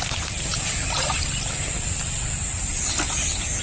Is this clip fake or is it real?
real